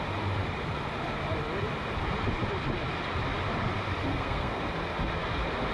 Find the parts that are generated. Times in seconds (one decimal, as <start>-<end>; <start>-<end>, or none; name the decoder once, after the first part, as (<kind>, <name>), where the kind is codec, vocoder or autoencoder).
4.1-4.6 (codec, SNAC)